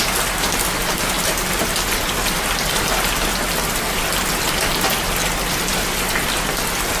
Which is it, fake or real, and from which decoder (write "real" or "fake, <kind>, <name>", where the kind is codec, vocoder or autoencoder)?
real